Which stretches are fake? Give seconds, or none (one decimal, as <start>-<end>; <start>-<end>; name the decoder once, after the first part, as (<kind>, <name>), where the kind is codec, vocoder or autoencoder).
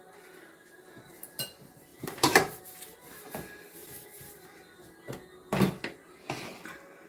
1.9-2.6 (vocoder, BigVGAN v2); 3.8-4.5